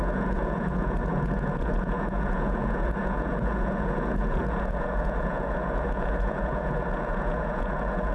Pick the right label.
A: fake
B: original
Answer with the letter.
A